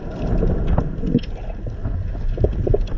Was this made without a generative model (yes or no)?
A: yes